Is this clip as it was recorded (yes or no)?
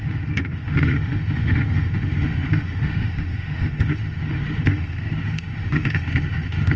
no